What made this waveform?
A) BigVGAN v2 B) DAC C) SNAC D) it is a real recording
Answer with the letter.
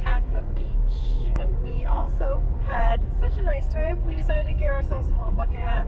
C